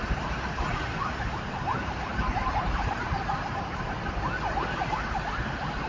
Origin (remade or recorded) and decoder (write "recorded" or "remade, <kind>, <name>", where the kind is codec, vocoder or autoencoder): recorded